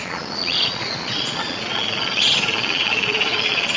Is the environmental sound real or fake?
fake